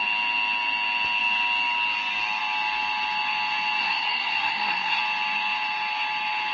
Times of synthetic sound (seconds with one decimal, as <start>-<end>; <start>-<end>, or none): 3.8-5.0